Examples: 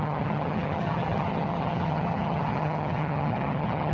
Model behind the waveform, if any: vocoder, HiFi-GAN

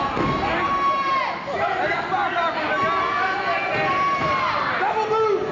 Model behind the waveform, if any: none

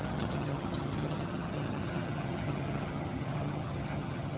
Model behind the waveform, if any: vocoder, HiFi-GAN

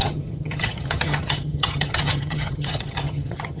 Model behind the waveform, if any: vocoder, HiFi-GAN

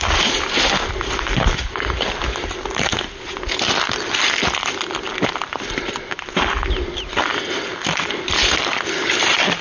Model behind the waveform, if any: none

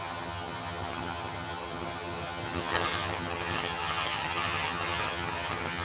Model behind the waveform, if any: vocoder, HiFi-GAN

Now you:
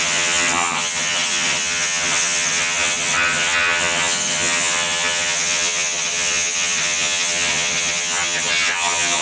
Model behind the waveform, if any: vocoder, HiFi-GAN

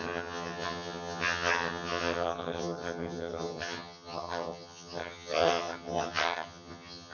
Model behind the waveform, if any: vocoder, HiFi-GAN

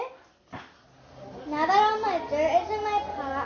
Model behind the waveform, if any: none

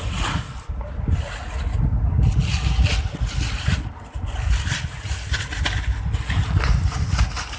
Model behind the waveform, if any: none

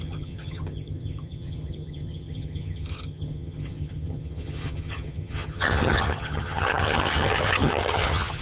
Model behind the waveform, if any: vocoder, HiFi-GAN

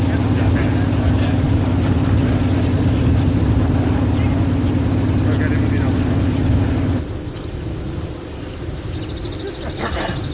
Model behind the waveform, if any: none